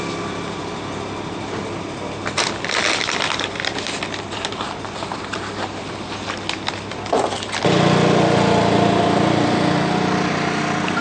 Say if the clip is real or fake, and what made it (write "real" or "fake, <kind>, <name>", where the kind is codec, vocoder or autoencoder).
real